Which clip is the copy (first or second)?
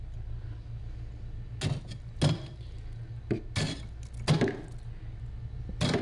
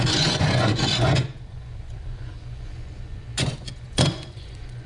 second